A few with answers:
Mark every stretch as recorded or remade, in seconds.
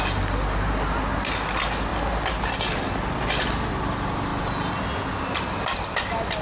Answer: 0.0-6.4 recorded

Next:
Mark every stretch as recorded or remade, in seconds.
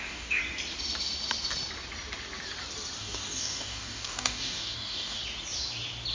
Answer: 0.0-0.4 remade; 0.4-3.0 recorded; 3.0-5.2 remade; 5.2-6.1 recorded